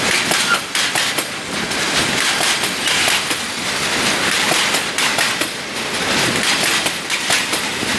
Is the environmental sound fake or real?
fake